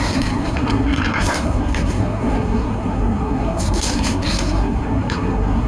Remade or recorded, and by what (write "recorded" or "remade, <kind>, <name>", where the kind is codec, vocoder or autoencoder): remade, codec, SNAC